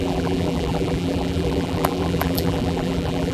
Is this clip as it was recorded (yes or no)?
no